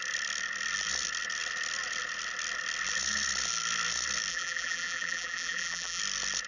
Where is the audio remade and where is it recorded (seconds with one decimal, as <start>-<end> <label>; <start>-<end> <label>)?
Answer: 0.0-4.3 recorded; 4.3-6.0 remade; 6.0-6.5 recorded